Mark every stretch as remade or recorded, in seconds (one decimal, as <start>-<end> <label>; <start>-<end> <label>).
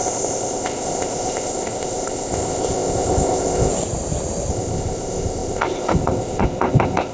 0.0-3.7 remade; 3.7-4.5 recorded; 4.5-7.1 remade